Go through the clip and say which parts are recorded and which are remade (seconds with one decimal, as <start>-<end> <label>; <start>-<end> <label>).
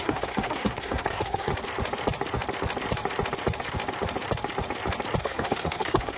0.0-1.5 remade; 1.5-5.2 recorded; 5.2-6.2 remade